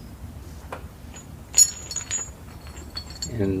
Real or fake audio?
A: real